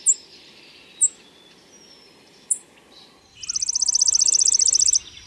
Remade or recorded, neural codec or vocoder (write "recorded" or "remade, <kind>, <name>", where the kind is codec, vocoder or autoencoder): recorded